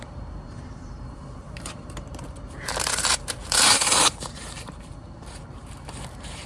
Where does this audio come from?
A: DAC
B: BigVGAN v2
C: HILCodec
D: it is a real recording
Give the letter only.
B